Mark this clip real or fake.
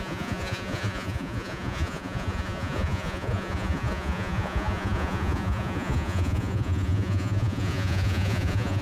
fake